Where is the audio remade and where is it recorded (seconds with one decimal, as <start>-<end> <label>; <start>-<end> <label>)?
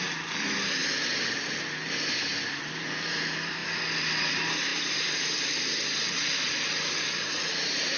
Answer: 0.0-0.8 remade; 0.8-2.6 recorded; 2.6-3.6 remade; 3.6-4.3 recorded; 4.3-8.0 remade